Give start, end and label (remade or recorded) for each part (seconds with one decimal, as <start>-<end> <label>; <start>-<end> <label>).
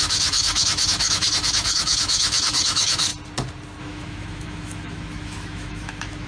0.0-3.1 remade; 3.1-3.8 recorded; 3.8-6.3 remade